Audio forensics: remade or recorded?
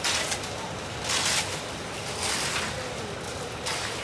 recorded